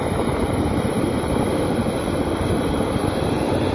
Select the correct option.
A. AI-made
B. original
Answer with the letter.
B